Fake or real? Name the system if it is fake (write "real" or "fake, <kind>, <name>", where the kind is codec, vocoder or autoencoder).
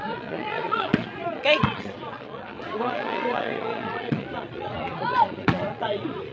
fake, vocoder, Vocos